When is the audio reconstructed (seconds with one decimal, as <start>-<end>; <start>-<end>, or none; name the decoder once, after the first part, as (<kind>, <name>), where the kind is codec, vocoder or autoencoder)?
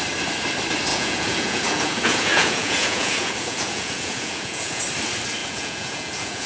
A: 0.9-4.8 (vocoder, Vocos); 5.4-6.5